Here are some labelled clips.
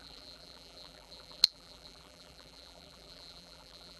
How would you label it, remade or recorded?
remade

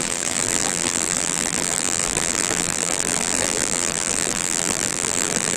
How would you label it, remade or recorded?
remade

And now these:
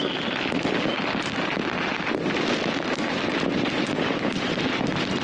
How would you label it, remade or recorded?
recorded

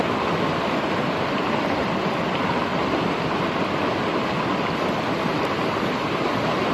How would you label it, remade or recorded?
recorded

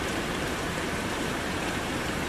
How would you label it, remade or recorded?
remade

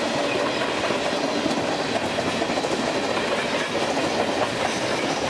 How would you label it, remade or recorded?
recorded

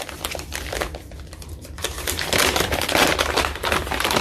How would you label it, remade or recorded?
remade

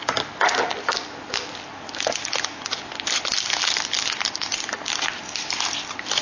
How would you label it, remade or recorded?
recorded